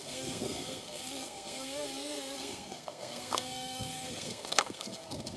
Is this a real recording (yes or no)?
no